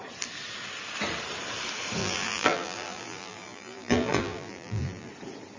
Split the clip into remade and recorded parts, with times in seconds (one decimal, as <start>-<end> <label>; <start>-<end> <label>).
0.0-2.0 recorded; 2.0-5.1 remade; 5.1-5.6 recorded